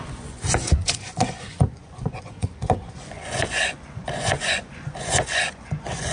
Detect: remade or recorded remade